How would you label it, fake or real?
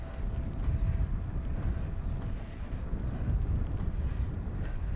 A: real